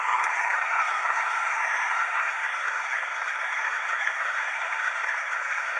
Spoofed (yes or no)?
yes